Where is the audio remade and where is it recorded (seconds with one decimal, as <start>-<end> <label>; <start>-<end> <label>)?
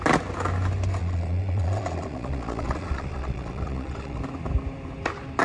0.0-1.0 recorded; 1.0-4.2 remade; 4.2-5.4 recorded